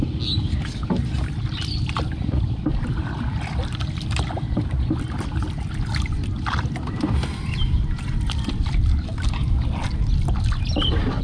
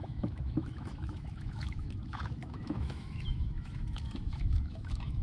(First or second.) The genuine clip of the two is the first